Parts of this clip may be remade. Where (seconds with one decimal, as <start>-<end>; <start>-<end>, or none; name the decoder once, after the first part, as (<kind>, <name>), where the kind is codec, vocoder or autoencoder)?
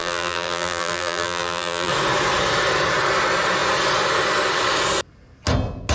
0.0-1.9 (vocoder, BigVGAN v2)